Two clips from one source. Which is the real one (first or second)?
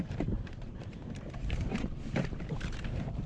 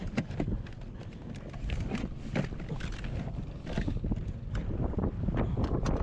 second